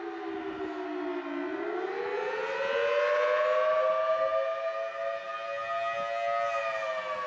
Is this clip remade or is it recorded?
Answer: recorded